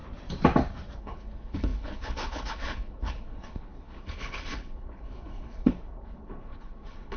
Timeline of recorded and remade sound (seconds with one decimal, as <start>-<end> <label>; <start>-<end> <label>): 0.0-1.0 recorded; 1.0-7.2 remade